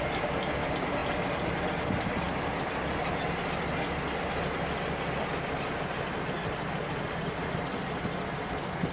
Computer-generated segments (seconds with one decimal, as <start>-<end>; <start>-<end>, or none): 5.9-7.5